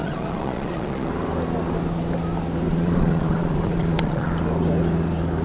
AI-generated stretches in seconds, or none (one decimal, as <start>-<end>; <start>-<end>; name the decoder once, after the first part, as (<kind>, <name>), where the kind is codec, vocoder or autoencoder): 0.0-1.1 (vocoder, Vocos); 2.7-4.3